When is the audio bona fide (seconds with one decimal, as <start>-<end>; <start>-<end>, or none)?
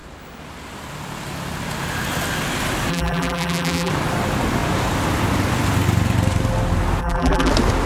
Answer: 0.0-2.9; 3.9-7.0; 7.5-7.9